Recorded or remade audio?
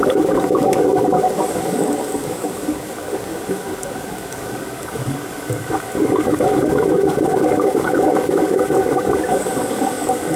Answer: remade